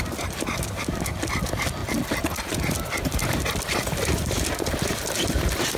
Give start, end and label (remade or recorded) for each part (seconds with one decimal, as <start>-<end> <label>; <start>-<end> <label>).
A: 0.0-1.8 remade; 1.8-2.4 recorded; 2.4-5.8 remade

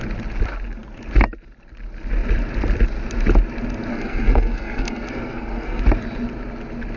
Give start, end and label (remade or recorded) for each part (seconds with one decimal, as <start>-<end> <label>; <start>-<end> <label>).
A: 0.0-3.9 recorded; 3.9-5.8 remade; 5.8-7.0 recorded

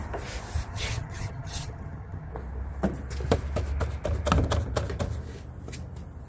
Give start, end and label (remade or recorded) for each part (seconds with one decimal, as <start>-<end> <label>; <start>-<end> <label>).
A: 0.0-0.7 recorded; 0.7-2.3 remade; 2.3-6.3 recorded